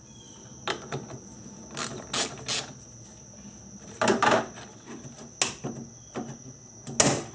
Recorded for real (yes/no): yes